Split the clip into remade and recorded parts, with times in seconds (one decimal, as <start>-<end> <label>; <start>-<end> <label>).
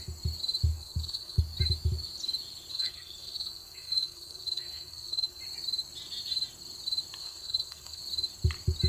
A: 0.0-0.7 recorded; 0.7-1.4 remade; 1.4-2.7 recorded; 2.7-5.4 remade; 5.4-7.2 recorded; 7.2-8.0 remade; 8.0-8.9 recorded